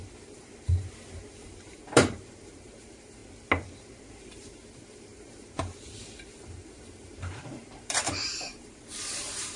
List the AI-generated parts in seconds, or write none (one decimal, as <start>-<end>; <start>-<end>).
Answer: 0.0-3.2; 4.0-9.6